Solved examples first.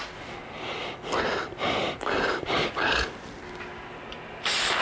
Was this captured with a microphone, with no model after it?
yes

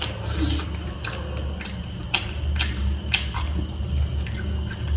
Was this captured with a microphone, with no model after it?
yes